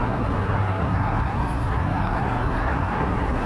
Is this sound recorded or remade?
remade